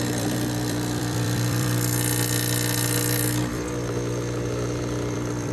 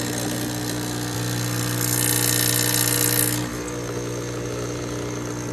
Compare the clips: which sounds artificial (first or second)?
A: first